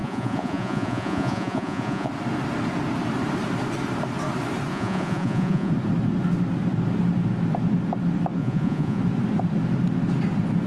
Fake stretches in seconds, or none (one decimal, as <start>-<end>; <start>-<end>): 0.0-2.1; 4.7-5.7; 8.4-9.0